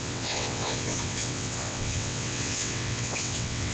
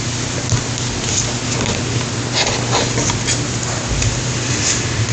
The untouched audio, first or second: second